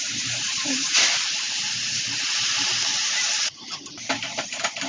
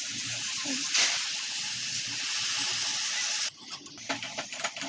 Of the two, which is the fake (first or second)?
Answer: first